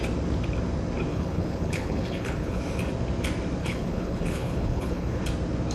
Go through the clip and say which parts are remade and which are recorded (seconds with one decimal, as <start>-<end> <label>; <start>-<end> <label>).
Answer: 0.0-1.1 recorded; 1.1-2.6 remade; 2.6-3.6 recorded; 3.6-5.2 remade; 5.2-5.7 recorded